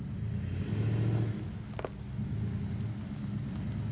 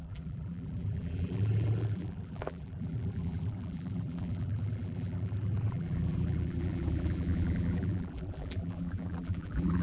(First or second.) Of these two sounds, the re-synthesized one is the second